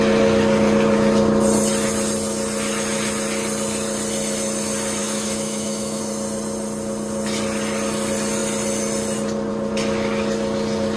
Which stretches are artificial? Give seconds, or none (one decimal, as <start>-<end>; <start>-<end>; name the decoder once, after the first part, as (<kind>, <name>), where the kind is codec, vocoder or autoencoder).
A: 5.0-6.0 (autoencoder, DAC-VAE)